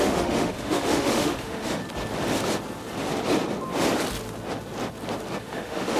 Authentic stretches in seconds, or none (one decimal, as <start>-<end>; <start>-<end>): 1.8-5.4